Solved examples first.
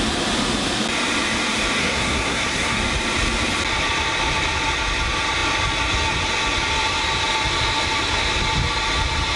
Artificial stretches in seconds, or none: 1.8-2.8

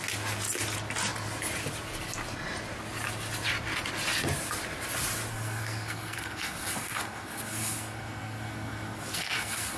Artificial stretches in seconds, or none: 5.3-9.8

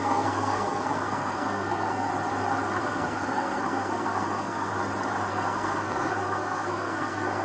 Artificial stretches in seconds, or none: 0.0-2.1; 2.8-4.7; 5.3-7.4

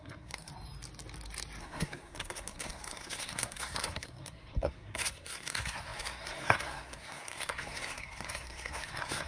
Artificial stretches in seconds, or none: 0.0-0.5; 1.6-9.3